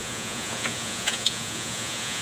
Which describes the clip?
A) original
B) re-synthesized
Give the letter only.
B